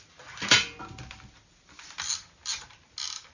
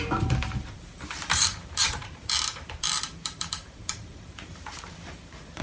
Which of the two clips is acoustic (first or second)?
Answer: first